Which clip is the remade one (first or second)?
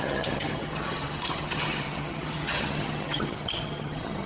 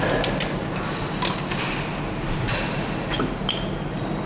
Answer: first